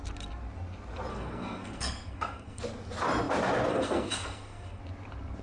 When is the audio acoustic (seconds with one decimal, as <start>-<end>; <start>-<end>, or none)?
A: 0.0-1.1; 2.6-3.7; 4.8-5.4